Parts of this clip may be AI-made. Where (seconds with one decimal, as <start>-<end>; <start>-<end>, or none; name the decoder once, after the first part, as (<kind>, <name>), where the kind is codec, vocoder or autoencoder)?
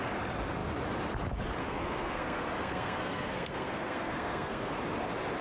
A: 1.6-4.7 (codec, SNAC)